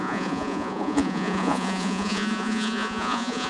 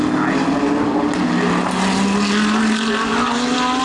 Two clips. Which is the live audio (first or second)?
second